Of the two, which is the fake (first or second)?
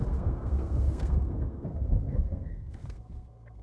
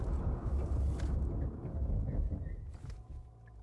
first